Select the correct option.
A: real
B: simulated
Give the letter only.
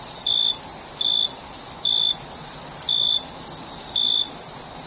A